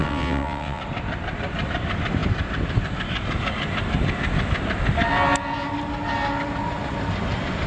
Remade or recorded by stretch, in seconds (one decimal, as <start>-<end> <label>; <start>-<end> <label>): 0.0-0.8 remade; 0.8-7.7 recorded